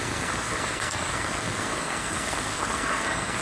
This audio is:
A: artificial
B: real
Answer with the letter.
A